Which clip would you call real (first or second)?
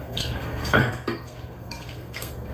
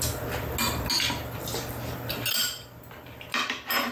second